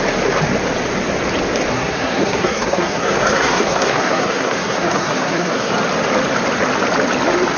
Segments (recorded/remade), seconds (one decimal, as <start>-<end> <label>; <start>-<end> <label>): 0.0-1.7 recorded; 1.7-5.7 remade; 5.7-7.6 recorded